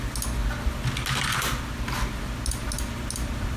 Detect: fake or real real